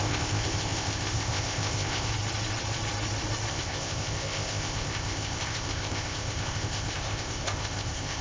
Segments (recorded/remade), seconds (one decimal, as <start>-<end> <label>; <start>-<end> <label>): 0.0-2.1 remade; 2.1-3.5 recorded; 3.5-8.2 remade